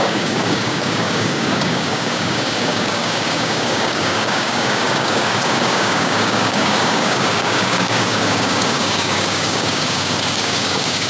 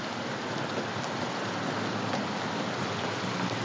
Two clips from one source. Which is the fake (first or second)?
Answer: first